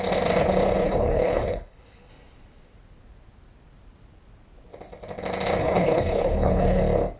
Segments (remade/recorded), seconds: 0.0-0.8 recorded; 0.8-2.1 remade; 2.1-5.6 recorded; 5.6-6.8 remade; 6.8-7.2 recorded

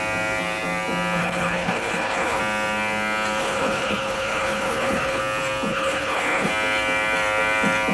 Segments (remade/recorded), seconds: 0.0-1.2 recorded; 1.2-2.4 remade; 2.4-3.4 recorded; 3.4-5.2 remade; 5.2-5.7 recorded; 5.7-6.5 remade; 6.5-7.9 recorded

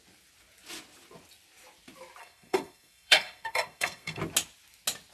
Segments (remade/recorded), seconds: 0.0-2.2 recorded; 2.2-4.2 remade; 4.2-5.1 recorded

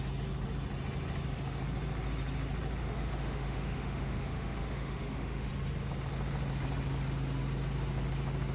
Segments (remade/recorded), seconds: 0.0-2.8 recorded; 2.8-5.5 remade; 5.5-8.5 recorded

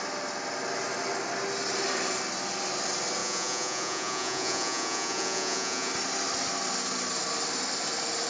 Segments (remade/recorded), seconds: 0.0-3.2 recorded; 3.2-5.9 remade; 5.9-8.3 recorded

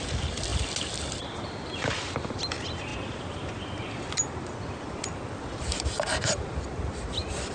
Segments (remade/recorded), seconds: 0.0-7.5 recorded